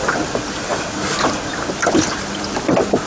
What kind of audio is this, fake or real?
real